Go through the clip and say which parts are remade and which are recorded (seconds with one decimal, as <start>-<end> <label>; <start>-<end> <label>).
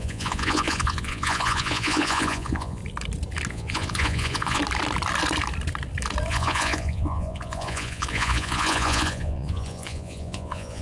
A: 0.0-2.8 remade; 2.8-3.5 recorded; 3.5-4.6 remade; 4.6-6.3 recorded; 6.3-10.8 remade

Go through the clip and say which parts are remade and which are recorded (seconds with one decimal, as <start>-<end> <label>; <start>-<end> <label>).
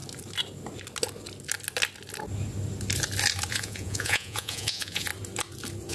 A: 0.0-3.5 recorded; 3.5-5.1 remade; 5.1-5.9 recorded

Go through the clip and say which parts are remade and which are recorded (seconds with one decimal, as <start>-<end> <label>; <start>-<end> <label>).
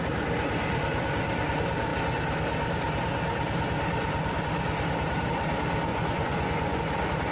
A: 0.0-5.9 recorded; 5.9-6.8 remade; 6.8-7.3 recorded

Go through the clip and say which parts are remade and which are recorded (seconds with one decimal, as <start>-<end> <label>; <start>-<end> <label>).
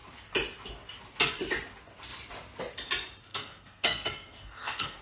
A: 0.0-3.3 recorded; 3.3-5.0 remade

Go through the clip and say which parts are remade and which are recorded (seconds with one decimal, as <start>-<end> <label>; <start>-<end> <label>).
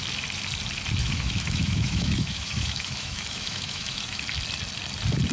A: 0.0-1.0 recorded; 1.0-4.2 remade; 4.2-5.3 recorded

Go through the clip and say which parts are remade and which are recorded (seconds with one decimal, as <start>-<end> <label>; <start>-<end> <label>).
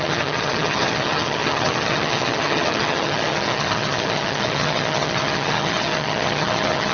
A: 0.0-6.9 remade